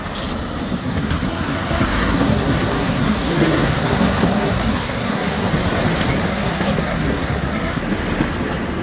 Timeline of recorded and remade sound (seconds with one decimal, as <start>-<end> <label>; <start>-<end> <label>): 0.0-0.8 recorded; 0.8-5.5 remade; 5.5-6.3 recorded; 6.3-7.8 remade; 7.8-8.8 recorded